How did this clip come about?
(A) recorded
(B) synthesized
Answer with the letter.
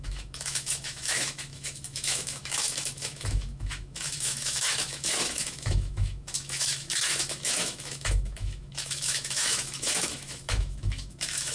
B